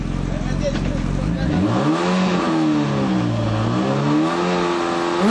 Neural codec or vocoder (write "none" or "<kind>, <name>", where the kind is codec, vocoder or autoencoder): none